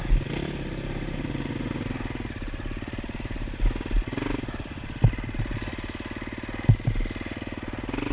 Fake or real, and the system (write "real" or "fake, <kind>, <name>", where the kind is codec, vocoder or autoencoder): real